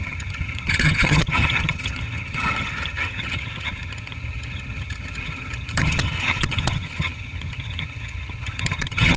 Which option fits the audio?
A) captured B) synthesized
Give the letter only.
B